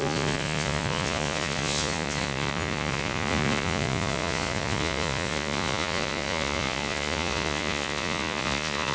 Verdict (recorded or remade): remade